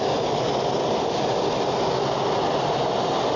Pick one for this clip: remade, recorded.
recorded